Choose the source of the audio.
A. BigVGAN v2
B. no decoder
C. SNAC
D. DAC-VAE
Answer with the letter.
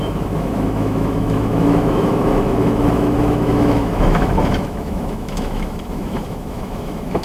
D